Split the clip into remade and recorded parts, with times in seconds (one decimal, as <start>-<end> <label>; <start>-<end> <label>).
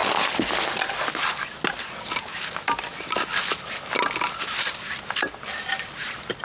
0.0-6.4 recorded